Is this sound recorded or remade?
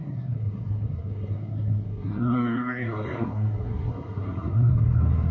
remade